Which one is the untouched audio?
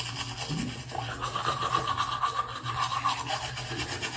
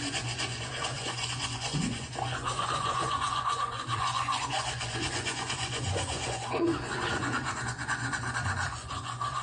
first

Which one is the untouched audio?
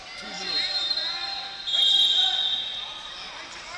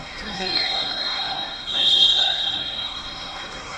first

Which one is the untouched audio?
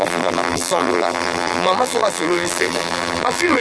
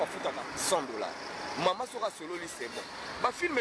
second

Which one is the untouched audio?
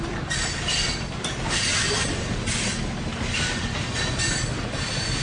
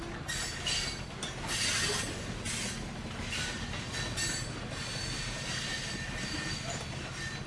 second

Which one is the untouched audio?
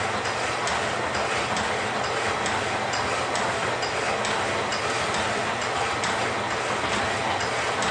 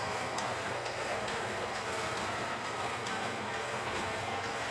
first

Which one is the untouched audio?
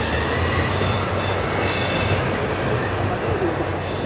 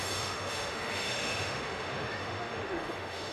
first